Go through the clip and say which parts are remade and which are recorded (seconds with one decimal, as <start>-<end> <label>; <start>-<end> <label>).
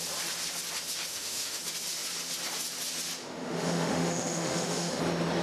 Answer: 0.0-1.1 recorded; 1.1-1.6 remade; 1.6-3.2 recorded; 3.2-5.0 remade; 5.0-5.4 recorded